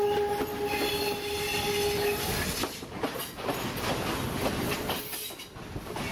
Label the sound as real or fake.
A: real